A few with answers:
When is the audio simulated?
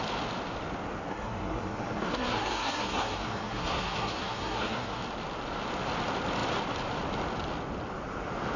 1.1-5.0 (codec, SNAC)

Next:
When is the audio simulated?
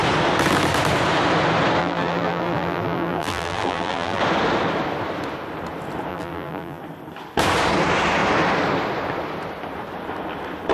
1.8-4.2 (vocoder, BigVGAN v2); 6.1-6.8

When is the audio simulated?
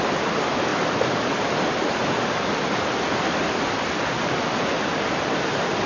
0.7-3.8 (vocoder, BigVGAN v2)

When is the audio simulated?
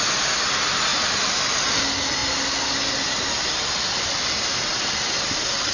none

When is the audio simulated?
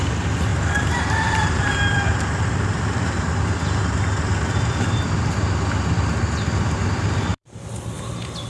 0.5-2.6 (vocoder, BigVGAN v2); 7.3-8.1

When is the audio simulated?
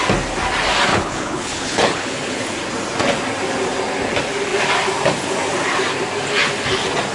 0.9-2.4 (codec, HILCodec)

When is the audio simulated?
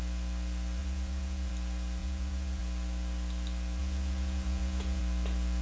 0.8-1.5 (vocoder, Vocos); 2.0-2.6; 3.8-5.0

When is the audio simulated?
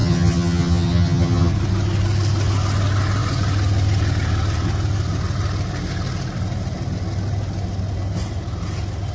0.0-1.5 (vocoder, HiFi-GAN)